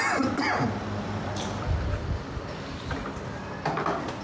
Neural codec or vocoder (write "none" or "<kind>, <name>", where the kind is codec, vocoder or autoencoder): none